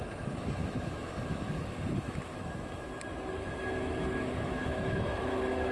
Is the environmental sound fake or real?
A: fake